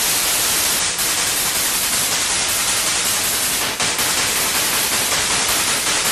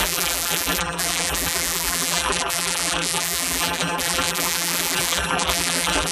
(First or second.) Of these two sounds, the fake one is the second